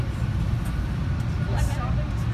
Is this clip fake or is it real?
real